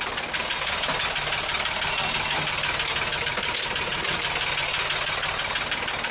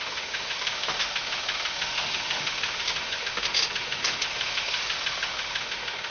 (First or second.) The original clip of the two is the first